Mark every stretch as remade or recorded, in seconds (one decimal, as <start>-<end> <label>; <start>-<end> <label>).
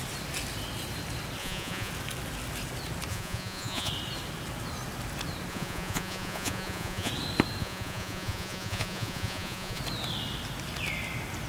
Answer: 0.0-1.4 recorded; 1.4-1.9 remade; 1.9-3.1 recorded; 3.1-3.9 remade; 3.9-5.5 recorded; 5.5-7.1 remade; 7.1-7.6 recorded; 7.6-9.8 remade; 9.8-11.5 recorded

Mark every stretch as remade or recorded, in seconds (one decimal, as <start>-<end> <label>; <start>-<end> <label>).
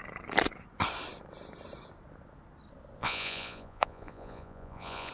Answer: 0.0-3.0 recorded; 3.0-5.1 remade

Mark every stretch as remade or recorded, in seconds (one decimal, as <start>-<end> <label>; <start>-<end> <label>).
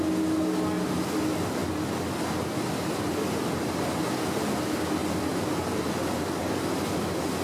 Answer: 0.0-7.4 recorded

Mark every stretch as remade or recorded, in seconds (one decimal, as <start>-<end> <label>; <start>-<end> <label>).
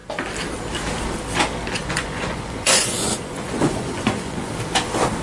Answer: 0.0-1.8 recorded; 1.8-4.5 remade; 4.5-5.2 recorded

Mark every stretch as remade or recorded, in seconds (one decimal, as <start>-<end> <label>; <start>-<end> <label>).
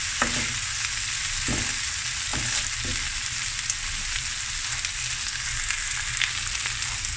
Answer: 0.0-7.2 recorded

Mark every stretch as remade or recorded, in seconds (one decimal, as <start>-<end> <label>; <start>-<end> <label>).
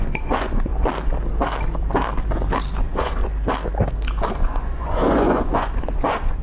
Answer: 0.0-0.7 remade; 0.7-2.8 recorded; 2.8-3.2 remade; 3.2-4.3 recorded; 4.3-6.4 remade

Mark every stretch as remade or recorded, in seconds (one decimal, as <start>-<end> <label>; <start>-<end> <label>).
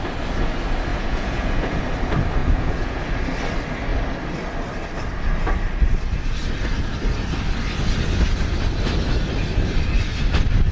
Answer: 0.0-0.9 recorded; 0.9-1.8 remade; 1.8-2.4 recorded; 2.4-3.0 remade; 3.0-10.7 recorded